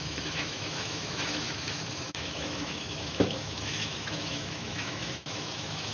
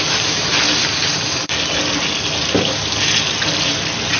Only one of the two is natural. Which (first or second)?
second